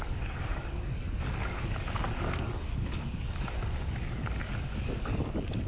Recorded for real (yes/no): no